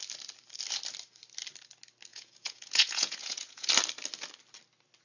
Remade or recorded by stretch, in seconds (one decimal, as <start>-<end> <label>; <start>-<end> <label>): 0.0-2.1 recorded; 2.1-3.7 remade; 3.7-5.0 recorded